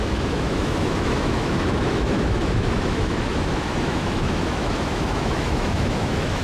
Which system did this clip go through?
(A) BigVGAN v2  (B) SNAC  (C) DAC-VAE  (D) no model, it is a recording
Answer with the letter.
C